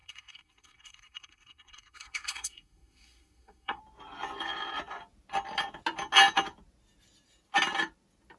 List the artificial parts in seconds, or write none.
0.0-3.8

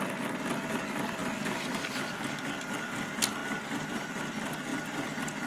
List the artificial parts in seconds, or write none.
none

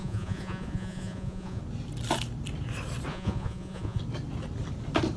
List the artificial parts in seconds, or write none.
0.0-1.6; 3.1-4.0